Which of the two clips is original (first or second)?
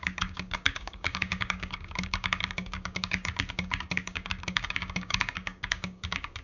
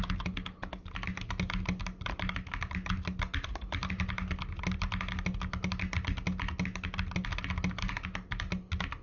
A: second